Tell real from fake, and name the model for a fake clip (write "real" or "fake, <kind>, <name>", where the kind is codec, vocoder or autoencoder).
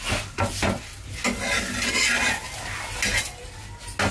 real